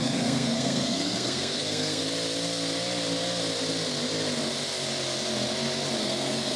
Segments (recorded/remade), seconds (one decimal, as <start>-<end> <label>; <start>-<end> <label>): 0.0-2.0 remade; 2.0-6.0 recorded; 6.0-6.6 remade